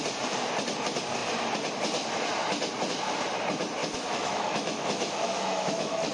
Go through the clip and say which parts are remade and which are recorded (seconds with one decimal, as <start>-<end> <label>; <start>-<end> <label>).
0.0-3.8 recorded; 3.8-6.1 remade